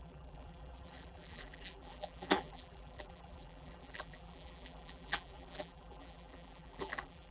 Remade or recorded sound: remade